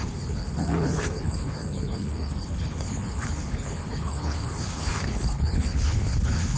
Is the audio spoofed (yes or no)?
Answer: yes